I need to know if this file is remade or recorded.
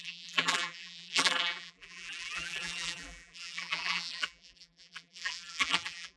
remade